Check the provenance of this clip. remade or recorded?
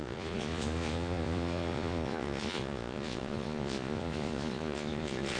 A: remade